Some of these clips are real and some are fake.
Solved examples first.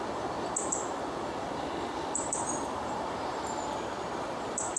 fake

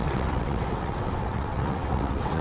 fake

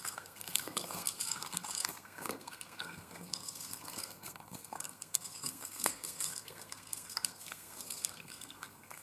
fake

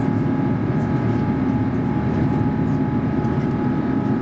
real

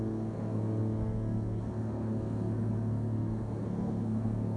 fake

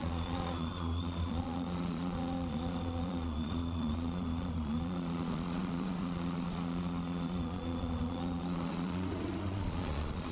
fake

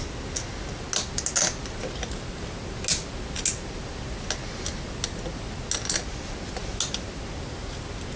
real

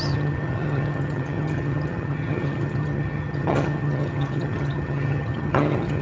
fake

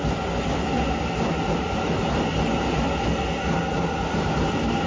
real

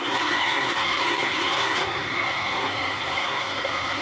fake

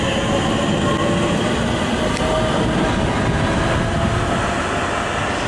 real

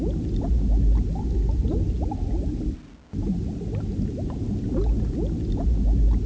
real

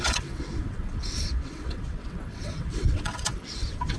fake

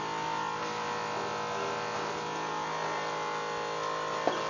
real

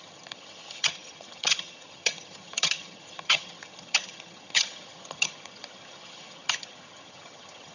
fake